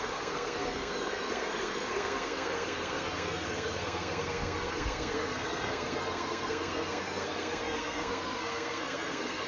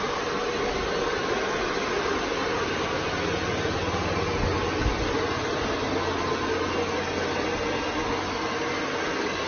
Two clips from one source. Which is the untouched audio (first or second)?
second